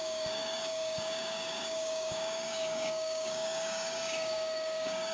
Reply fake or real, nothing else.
fake